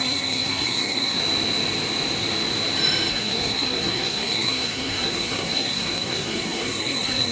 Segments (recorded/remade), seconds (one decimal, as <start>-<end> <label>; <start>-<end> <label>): 0.0-1.2 remade; 1.2-3.1 recorded; 3.1-7.3 remade